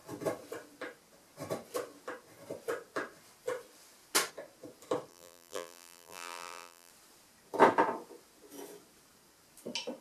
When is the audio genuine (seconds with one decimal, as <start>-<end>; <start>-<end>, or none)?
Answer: 0.0-5.1; 6.9-10.0